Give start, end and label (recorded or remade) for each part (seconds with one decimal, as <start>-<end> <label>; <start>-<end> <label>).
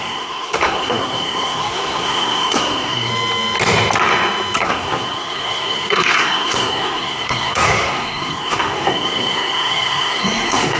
0.0-3.1 remade; 3.1-4.6 recorded; 4.6-10.8 remade